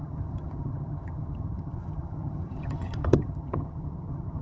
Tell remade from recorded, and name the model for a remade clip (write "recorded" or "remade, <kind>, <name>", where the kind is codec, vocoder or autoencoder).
remade, vocoder, HiFi-GAN